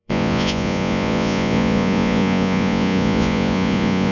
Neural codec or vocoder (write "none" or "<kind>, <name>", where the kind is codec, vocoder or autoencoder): vocoder, Vocos